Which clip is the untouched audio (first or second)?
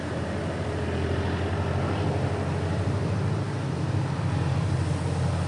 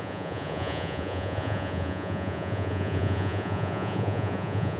first